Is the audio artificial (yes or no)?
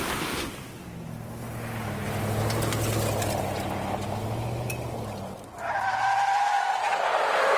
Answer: no